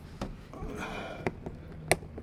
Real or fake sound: real